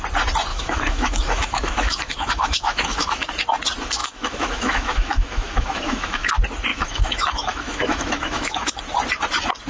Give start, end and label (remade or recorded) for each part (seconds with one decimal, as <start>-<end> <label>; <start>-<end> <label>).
0.0-0.5 recorded; 0.5-3.3 remade; 3.3-4.0 recorded; 4.0-6.3 remade; 6.3-6.7 recorded; 6.7-8.8 remade; 8.8-9.7 recorded